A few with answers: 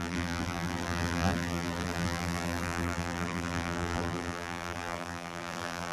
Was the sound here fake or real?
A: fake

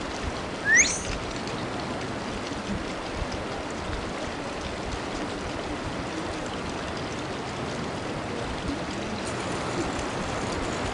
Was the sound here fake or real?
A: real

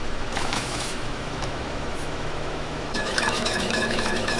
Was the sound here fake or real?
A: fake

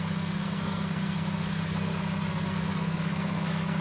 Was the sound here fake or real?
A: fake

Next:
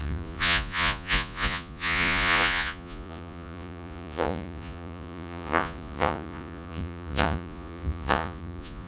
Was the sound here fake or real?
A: fake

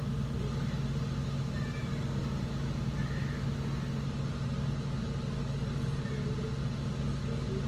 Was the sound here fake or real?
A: real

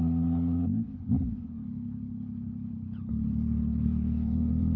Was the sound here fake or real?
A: fake